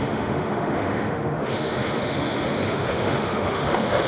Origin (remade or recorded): remade